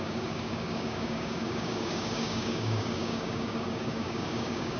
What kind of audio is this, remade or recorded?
remade